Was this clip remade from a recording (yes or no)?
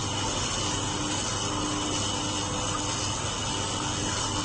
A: no